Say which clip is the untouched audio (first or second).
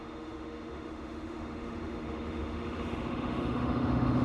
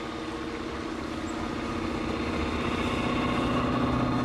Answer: second